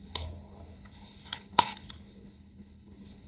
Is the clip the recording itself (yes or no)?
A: no